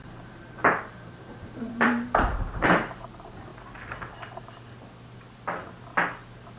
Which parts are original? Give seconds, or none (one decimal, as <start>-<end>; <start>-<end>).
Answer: 3.5-6.6